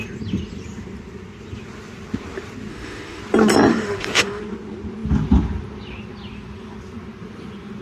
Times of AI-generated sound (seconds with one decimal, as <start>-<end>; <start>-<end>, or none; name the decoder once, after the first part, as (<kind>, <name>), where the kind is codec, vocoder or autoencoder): 2.7-3.2 (autoencoder, DAC-VAE); 3.7-4.4